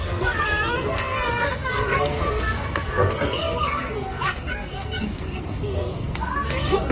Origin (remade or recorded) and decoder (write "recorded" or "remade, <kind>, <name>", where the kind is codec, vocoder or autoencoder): remade, codec, SNAC